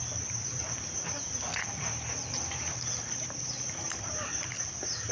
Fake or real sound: fake